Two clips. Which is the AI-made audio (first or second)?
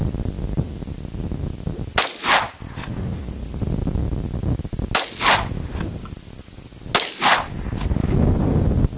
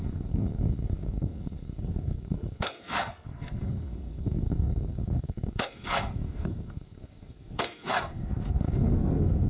second